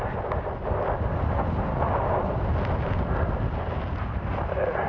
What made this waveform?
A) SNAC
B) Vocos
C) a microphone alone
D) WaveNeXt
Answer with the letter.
C